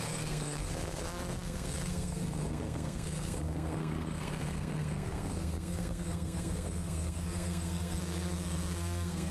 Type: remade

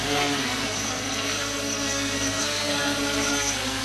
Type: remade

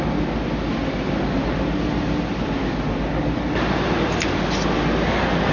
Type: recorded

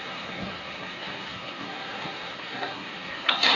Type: remade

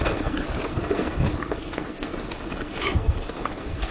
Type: remade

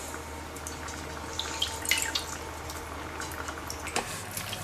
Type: recorded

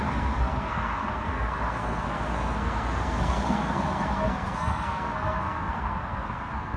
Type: remade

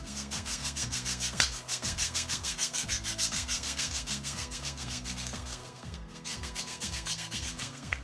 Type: remade